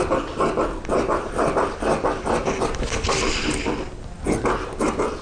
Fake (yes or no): no